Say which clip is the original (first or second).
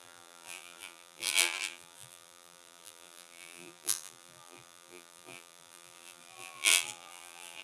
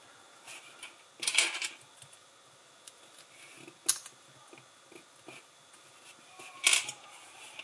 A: second